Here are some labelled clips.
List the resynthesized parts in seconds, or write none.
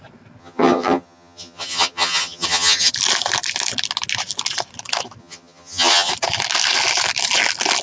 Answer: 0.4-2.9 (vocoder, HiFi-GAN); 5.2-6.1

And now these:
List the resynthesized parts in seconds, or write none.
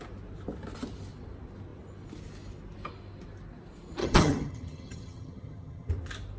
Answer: 4.0-5.9 (vocoder, HiFi-GAN)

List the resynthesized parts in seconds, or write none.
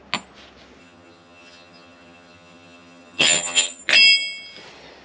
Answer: 0.8-3.8 (vocoder, HiFi-GAN)